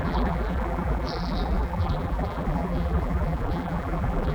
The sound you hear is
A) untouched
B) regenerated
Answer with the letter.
B